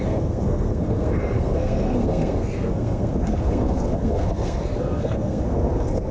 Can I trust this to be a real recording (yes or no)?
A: no